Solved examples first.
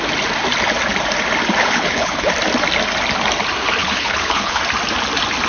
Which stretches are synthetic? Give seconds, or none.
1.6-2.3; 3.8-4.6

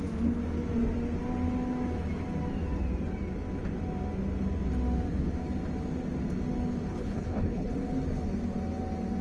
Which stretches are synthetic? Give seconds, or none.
6.9-7.7

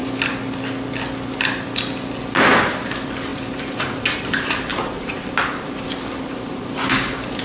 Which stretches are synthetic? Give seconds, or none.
none

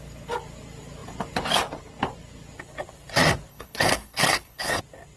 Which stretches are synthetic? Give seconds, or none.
3.5-4.8

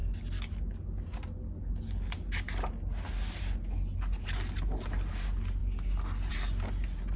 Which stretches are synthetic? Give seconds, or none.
none

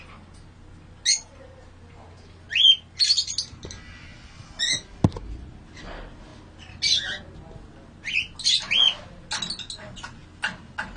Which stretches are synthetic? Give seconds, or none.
none

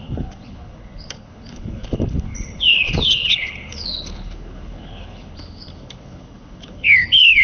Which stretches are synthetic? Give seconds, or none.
0.0-7.4

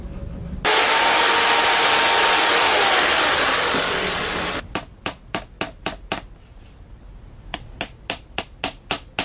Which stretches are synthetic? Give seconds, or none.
none